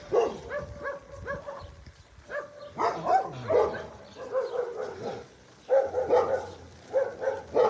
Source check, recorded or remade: recorded